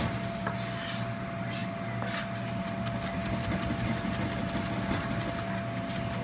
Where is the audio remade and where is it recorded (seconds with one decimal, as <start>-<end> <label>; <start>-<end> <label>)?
0.0-6.2 recorded